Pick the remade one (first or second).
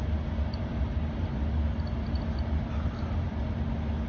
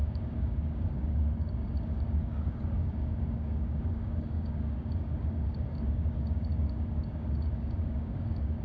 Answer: second